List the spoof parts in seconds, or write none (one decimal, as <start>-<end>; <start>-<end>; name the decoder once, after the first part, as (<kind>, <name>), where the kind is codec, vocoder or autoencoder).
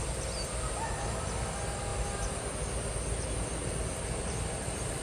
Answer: 3.5-5.0 (vocoder, BigVGAN v2)